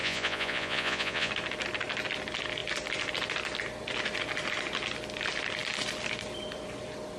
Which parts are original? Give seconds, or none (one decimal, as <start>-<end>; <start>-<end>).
1.3-7.2